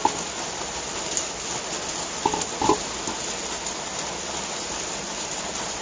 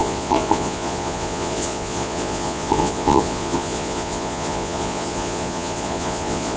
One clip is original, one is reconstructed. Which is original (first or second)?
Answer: first